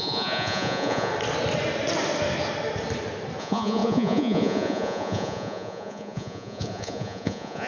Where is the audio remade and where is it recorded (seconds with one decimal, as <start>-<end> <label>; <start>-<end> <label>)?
0.0-1.1 remade; 1.1-3.4 recorded; 3.4-7.7 remade